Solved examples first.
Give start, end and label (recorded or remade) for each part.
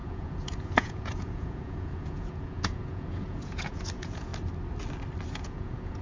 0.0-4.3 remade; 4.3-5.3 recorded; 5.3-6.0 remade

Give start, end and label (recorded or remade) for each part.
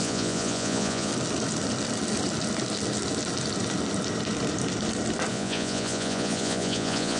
0.0-1.1 remade; 1.1-5.3 recorded; 5.3-7.2 remade